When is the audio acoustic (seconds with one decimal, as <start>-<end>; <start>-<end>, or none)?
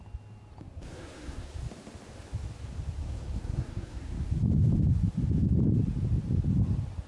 0.0-0.6; 1.6-3.0; 4.4-7.1